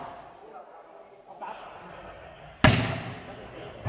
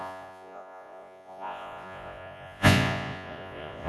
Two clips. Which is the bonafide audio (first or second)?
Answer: first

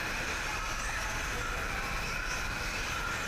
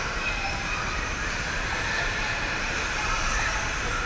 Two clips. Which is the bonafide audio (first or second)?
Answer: first